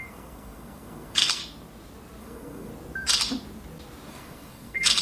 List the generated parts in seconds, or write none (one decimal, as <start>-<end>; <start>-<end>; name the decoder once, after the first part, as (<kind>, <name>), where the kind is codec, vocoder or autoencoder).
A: 0.0-1.4 (codec, SNAC); 2.2-2.7; 4.1-5.0